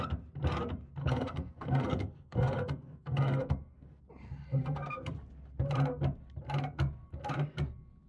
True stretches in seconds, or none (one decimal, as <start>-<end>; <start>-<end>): 0.0-1.0; 4.0-4.6; 5.1-8.1